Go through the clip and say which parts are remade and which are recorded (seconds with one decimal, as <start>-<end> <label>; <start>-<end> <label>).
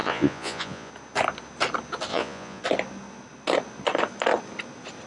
0.0-0.9 remade; 0.9-2.1 recorded; 2.1-2.6 remade; 2.6-5.1 recorded